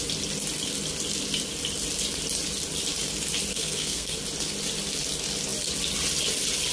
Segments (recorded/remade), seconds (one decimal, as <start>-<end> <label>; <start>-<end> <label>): 0.0-3.5 recorded; 3.5-4.2 remade; 4.2-6.7 recorded